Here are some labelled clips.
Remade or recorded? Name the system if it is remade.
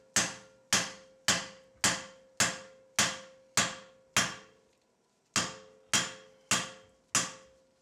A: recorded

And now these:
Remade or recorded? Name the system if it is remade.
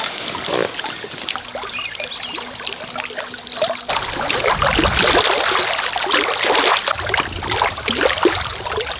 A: recorded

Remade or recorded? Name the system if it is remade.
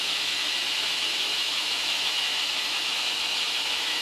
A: remade, autoencoder, DAC-VAE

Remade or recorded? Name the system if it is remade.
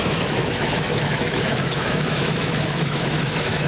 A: remade, autoencoder, DAC-VAE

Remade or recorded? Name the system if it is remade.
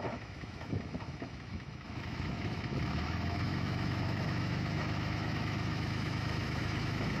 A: remade, autoencoder, DAC-VAE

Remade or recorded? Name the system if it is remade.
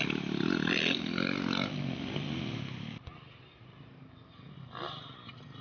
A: recorded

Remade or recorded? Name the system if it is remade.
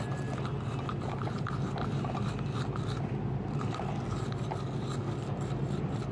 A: recorded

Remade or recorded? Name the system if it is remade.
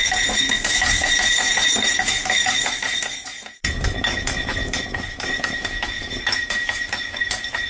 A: remade, autoencoder, DAC-VAE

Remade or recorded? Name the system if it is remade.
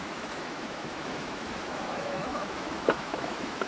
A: remade, autoencoder, DAC-VAE